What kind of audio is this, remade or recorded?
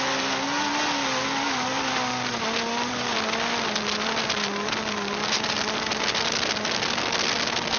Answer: recorded